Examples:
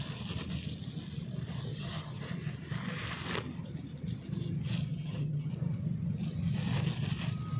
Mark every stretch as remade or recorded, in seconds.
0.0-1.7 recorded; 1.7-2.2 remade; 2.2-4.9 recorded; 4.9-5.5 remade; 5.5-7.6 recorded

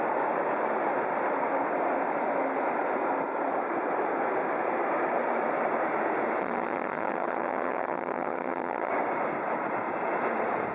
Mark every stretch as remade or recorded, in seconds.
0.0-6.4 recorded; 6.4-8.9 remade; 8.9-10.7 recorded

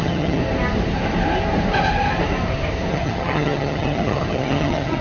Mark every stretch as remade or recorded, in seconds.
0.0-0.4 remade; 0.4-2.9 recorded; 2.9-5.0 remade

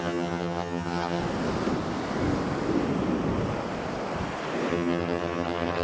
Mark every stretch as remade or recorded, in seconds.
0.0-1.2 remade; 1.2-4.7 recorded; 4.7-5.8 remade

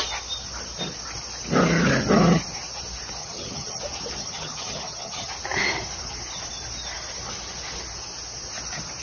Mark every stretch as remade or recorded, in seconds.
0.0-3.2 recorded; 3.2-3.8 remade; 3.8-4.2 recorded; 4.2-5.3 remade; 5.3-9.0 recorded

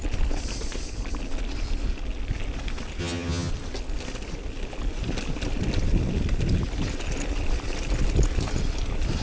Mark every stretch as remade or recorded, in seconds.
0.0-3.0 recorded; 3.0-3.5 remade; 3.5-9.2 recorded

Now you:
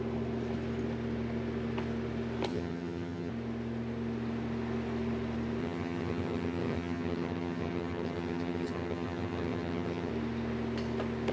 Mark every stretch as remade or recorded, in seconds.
0.0-2.5 recorded; 2.5-3.3 remade; 3.3-5.6 recorded; 5.6-10.1 remade; 10.1-11.3 recorded

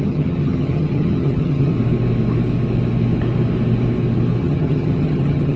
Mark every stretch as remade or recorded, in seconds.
0.0-1.7 remade; 1.7-4.4 recorded; 4.4-5.6 remade